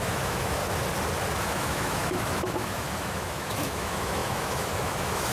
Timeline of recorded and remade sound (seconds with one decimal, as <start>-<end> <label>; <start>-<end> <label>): 0.0-0.6 remade; 0.6-1.4 recorded; 1.4-5.3 remade